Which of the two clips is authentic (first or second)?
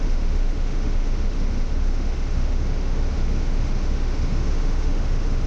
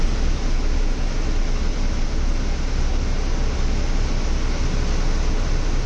second